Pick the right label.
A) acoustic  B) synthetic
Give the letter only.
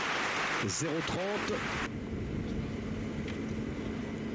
A